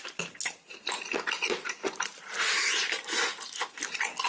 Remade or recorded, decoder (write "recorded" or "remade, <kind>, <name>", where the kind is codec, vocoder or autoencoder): recorded